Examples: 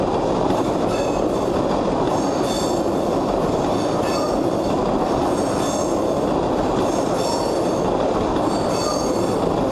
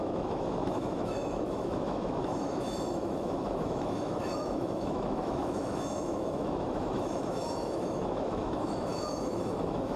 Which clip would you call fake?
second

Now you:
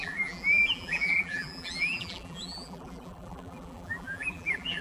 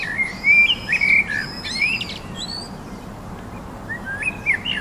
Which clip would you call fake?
first